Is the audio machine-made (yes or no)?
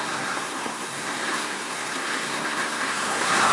yes